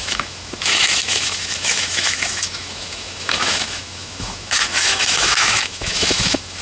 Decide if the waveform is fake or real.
fake